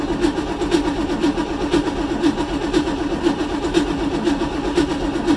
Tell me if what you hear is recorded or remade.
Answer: recorded